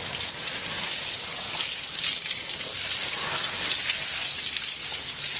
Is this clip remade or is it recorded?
recorded